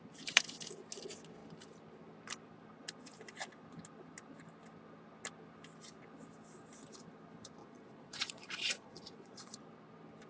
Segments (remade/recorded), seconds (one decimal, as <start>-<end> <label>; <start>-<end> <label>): 0.0-7.6 recorded; 7.6-9.6 remade; 9.6-10.3 recorded